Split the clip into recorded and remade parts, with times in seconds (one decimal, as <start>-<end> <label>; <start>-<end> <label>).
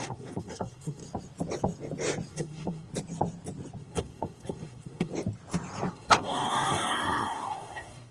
0.0-1.0 remade; 1.0-2.3 recorded; 2.3-2.9 remade; 2.9-3.8 recorded; 3.8-5.1 remade; 5.1-5.9 recorded; 5.9-8.1 remade